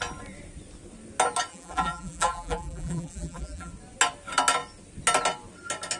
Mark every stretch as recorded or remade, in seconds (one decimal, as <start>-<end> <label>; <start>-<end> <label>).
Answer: 0.0-1.5 recorded; 1.5-3.7 remade; 3.7-6.0 recorded